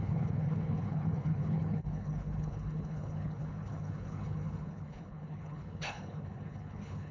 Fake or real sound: fake